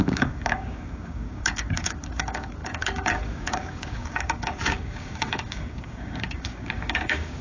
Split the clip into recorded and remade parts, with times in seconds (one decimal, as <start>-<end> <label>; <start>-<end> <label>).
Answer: 0.0-7.4 remade